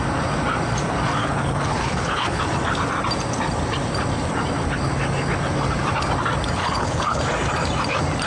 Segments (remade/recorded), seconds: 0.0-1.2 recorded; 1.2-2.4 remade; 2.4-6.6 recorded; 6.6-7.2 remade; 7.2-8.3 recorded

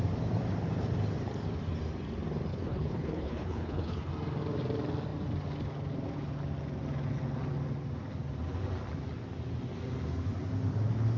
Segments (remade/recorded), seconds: 0.0-2.5 recorded; 2.5-4.1 remade; 4.1-11.2 recorded